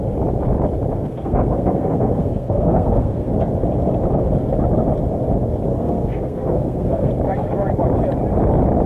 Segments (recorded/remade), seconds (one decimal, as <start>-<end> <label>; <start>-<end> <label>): 0.0-1.0 recorded; 1.0-3.3 remade; 3.3-5.7 recorded; 5.7-7.1 remade; 7.1-8.9 recorded